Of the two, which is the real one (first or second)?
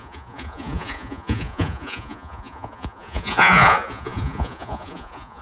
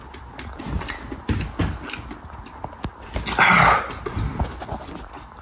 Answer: second